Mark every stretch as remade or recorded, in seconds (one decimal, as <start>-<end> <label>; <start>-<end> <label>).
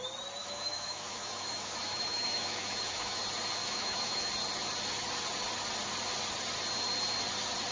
0.0-0.4 recorded; 0.4-3.2 remade; 3.2-3.6 recorded; 3.6-4.3 remade; 4.3-7.7 recorded